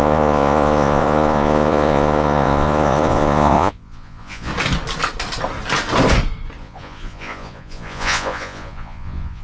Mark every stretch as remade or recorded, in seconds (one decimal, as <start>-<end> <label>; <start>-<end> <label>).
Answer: 0.0-4.5 remade; 4.5-6.6 recorded; 6.6-9.4 remade